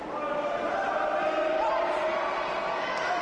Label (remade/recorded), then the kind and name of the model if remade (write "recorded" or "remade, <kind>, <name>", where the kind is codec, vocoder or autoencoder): recorded